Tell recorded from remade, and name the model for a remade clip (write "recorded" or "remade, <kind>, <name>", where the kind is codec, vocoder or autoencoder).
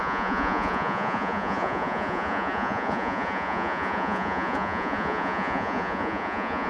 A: remade, vocoder, Vocos